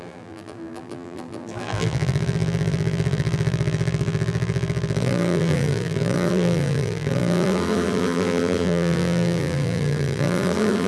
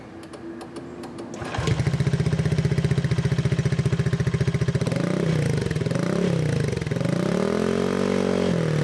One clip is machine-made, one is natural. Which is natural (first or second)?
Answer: second